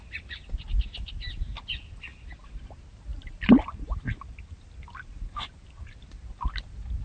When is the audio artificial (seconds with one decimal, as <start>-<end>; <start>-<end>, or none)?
none